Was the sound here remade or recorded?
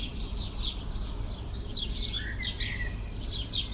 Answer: recorded